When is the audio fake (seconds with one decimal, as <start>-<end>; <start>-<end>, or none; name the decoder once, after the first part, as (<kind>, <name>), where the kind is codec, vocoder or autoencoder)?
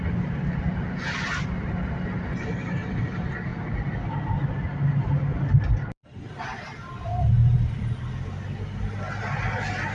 none